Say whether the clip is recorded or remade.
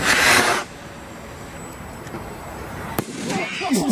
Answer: remade